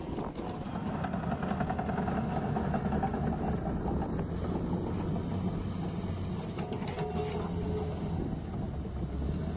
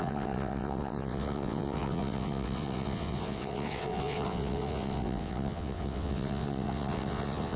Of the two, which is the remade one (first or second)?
second